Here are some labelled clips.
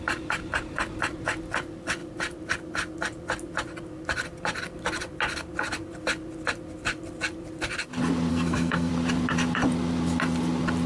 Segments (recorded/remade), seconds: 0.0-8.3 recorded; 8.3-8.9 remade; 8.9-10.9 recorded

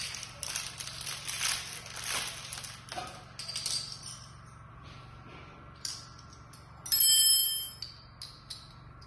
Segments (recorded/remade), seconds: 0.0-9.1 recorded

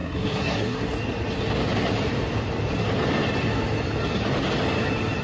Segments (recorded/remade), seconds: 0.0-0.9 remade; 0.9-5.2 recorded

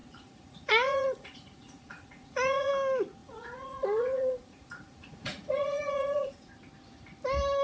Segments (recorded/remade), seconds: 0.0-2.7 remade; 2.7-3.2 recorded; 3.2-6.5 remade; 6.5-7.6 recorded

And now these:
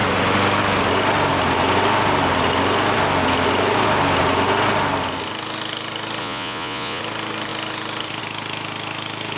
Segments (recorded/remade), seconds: 0.0-6.2 recorded; 6.2-7.0 remade; 7.0-9.4 recorded

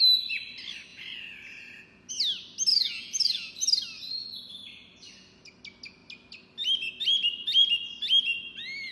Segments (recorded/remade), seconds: 0.0-0.9 recorded; 0.9-2.1 remade; 2.1-2.7 recorded; 2.7-3.5 remade; 3.5-8.9 recorded

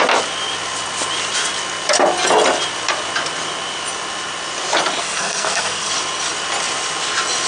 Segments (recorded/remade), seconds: 0.0-5.0 recorded; 5.0-5.9 remade; 5.9-7.5 recorded

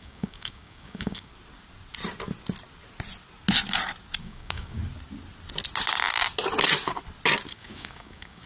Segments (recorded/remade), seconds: 0.0-1.3 remade; 1.3-4.2 recorded; 4.2-4.8 remade; 4.8-7.5 recorded; 7.5-8.5 remade